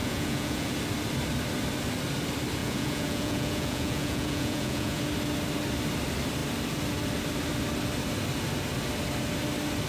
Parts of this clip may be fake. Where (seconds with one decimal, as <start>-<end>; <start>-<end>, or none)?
0.0-0.7; 2.6-5.0